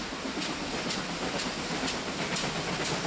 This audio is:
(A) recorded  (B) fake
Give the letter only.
A